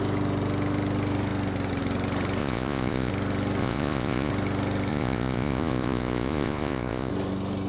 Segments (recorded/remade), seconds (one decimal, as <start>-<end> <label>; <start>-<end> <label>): 0.0-2.4 recorded; 2.4-3.1 remade; 3.1-3.6 recorded; 3.6-4.3 remade; 4.3-4.9 recorded; 4.9-7.1 remade; 7.1-7.7 recorded